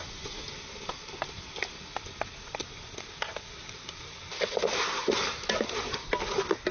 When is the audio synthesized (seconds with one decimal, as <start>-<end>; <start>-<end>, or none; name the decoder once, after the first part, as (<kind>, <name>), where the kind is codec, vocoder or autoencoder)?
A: 3.6-4.2 (vocoder, BigVGAN v2); 5.0-5.9